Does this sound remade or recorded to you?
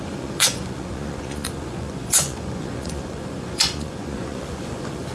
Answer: remade